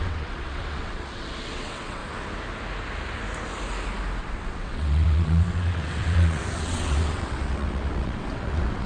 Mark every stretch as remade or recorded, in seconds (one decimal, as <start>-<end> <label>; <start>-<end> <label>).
0.0-2.0 remade; 2.0-4.2 recorded; 4.2-8.9 remade